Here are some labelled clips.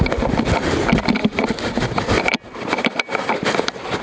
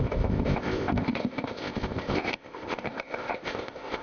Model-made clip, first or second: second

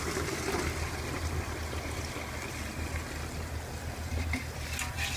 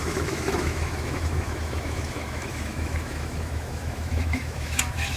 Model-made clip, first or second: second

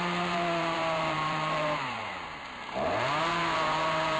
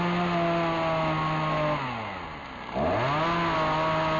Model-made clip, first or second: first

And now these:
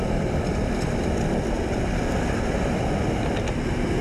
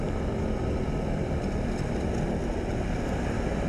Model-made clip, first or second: first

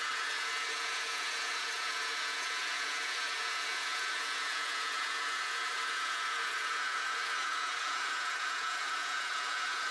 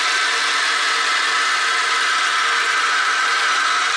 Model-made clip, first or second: first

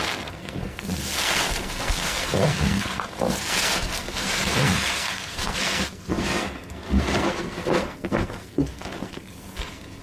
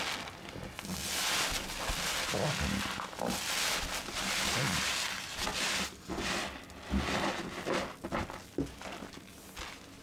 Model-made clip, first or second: first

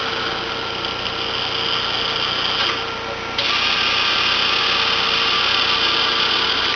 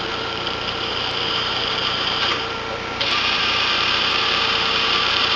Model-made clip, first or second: second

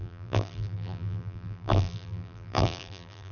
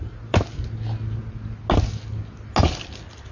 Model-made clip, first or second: first